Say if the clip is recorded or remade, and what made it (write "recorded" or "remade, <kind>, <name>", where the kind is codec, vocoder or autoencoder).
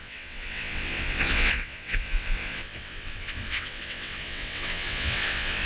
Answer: remade, vocoder, WaveNeXt